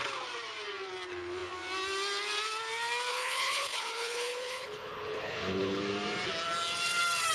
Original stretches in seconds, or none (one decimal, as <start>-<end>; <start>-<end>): 0.0-3.1; 5.8-7.3